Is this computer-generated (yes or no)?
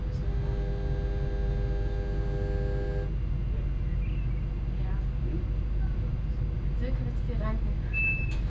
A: no